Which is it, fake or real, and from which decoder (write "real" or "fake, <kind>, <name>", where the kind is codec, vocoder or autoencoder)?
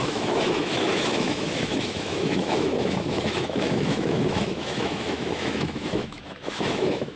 fake, autoencoder, DAC-VAE